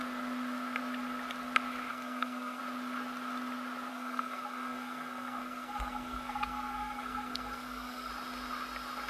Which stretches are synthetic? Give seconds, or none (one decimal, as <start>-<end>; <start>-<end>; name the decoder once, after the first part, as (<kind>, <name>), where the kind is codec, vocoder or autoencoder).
1.9-2.6 (codec, SNAC); 3.9-8.1